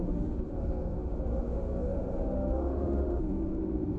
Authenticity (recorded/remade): remade